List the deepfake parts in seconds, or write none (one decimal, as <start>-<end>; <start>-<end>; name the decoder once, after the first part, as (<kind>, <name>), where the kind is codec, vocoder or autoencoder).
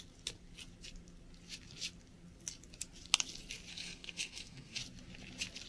3.7-4.8 (codec, SNAC)